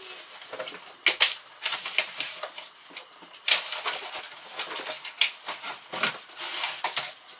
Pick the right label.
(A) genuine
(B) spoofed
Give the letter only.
A